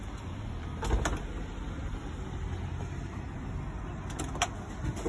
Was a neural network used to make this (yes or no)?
no